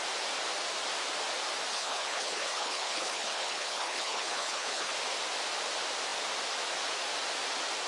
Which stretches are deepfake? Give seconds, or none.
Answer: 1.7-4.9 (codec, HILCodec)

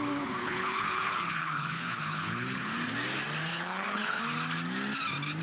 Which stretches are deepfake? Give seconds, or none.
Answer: 0.4-2.7 (codec, HILCodec); 3.5-4.2

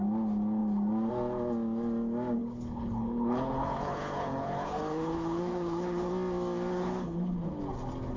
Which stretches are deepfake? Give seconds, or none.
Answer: 2.4-6.1 (codec, HILCodec); 6.7-7.6